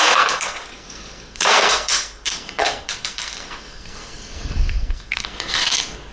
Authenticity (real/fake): fake